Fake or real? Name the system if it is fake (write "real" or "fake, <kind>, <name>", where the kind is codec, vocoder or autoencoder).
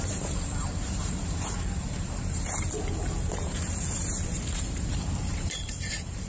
fake, vocoder, BigVGAN v2